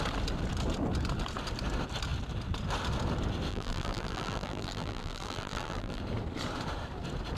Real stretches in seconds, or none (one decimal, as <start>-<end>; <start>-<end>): 0.0-3.5; 6.0-7.4